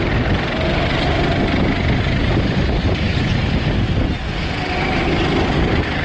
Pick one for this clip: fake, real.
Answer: real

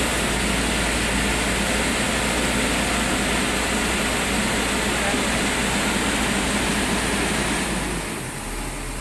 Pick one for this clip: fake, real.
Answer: real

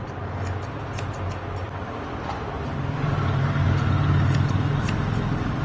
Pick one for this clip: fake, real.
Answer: real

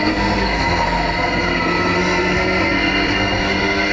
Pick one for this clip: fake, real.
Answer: fake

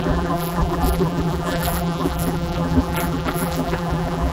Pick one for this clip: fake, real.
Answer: fake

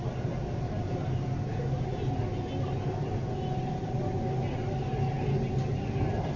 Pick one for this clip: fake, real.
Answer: real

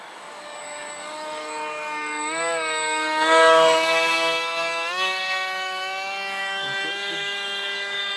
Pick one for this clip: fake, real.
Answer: fake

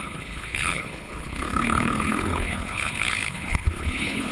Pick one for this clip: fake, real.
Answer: fake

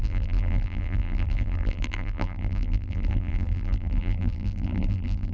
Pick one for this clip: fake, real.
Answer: fake